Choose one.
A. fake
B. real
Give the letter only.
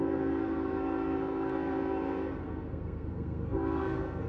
A